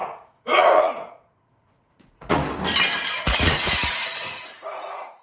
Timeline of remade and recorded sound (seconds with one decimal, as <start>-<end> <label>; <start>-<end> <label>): 0.0-2.4 remade; 2.4-3.2 recorded; 3.2-5.2 remade